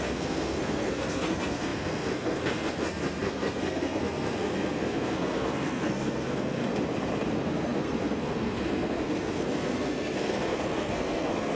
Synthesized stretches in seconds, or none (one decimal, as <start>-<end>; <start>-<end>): 0.0-6.6; 7.3-11.5